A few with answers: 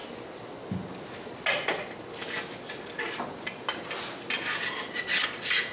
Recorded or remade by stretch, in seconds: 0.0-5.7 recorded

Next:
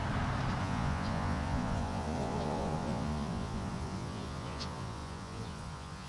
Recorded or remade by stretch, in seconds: 0.0-0.6 recorded; 0.6-6.1 remade

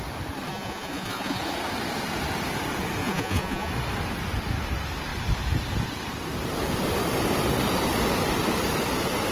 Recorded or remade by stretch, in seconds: 0.0-0.5 recorded; 0.5-1.4 remade; 1.4-3.0 recorded; 3.0-3.7 remade; 3.7-9.3 recorded

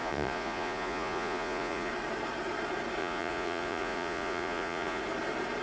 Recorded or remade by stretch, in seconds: 0.0-1.9 remade; 1.9-3.0 recorded; 3.0-5.0 remade; 5.0-5.6 recorded

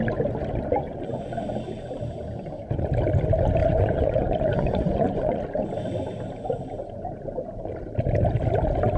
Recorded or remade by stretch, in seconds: 0.0-0.7 recorded; 0.7-1.3 remade; 1.3-3.6 recorded; 3.6-5.4 remade; 5.4-9.0 recorded

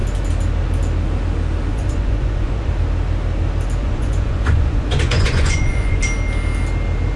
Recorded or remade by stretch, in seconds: 0.0-1.7 recorded; 1.7-2.7 remade; 2.7-3.8 recorded; 3.8-6.0 remade; 6.0-7.2 recorded